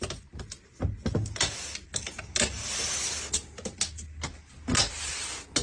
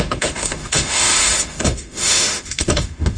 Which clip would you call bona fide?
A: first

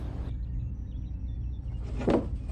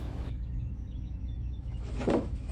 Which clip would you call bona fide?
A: first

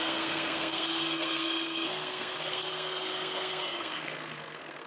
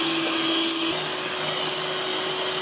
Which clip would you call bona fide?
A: second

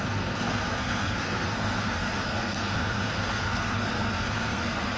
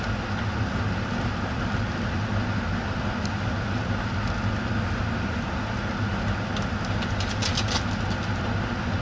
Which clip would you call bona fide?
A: second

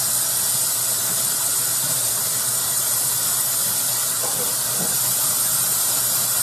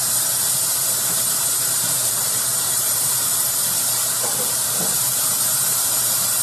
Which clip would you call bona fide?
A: first